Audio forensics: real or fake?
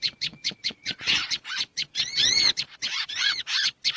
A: fake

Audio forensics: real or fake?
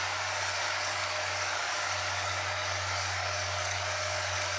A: fake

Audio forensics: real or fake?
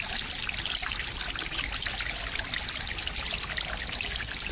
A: real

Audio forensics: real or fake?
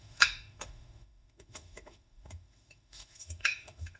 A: fake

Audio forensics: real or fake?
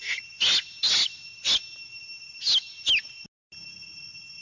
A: real